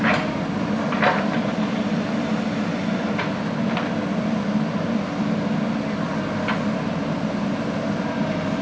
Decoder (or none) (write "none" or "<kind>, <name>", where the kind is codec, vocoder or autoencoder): none